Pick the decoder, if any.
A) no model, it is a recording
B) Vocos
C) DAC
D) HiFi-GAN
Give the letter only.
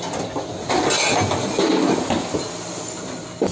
A